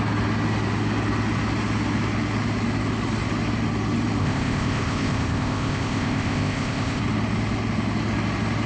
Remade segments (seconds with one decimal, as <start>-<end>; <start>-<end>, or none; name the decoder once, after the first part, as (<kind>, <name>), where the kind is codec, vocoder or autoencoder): 4.2-7.0 (codec, ZipCodec)